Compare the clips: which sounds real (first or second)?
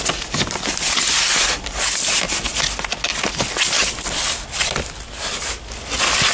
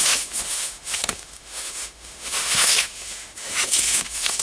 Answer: first